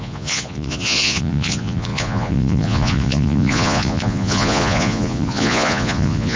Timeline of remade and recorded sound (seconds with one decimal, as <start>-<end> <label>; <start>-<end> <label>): 0.0-6.4 remade

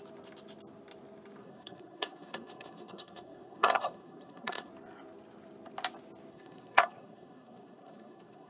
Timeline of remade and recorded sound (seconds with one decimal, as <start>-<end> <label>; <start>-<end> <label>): 0.0-1.4 recorded; 1.4-4.7 remade; 4.7-6.3 recorded; 6.3-8.5 remade

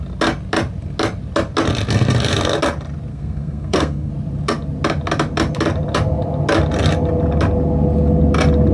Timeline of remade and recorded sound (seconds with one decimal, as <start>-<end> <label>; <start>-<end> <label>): 0.0-3.1 recorded; 3.1-4.1 remade; 4.1-8.7 recorded

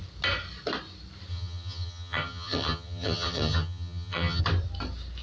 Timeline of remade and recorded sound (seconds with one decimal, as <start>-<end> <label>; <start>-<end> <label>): 0.0-1.3 recorded; 1.3-4.4 remade; 4.4-5.2 recorded

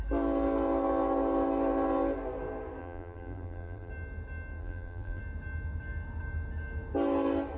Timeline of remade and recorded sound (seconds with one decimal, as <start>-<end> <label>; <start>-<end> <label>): 0.0-2.8 recorded; 2.8-3.9 remade; 3.9-4.6 recorded; 4.6-5.2 remade; 5.2-7.6 recorded

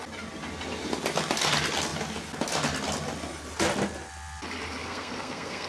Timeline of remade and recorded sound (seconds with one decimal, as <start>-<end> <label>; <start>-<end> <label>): 0.0-4.8 recorded; 4.8-5.7 remade